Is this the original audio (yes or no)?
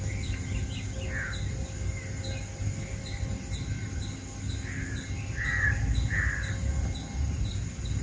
yes